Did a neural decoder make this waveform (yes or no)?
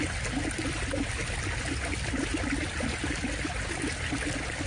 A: no